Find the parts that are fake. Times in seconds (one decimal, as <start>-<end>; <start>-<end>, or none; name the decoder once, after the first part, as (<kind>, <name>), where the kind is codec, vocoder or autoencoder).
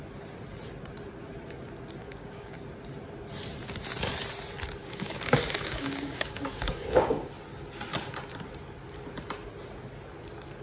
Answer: 2.0-2.5 (codec, DAC); 4.8-7.3